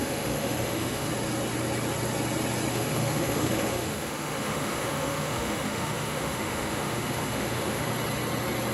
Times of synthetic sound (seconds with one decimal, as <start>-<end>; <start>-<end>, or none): 0.0-1.1; 2.7-7.9